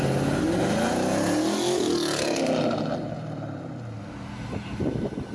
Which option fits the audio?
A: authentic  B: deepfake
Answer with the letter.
A